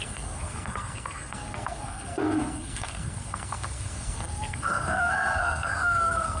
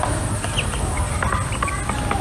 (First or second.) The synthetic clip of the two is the first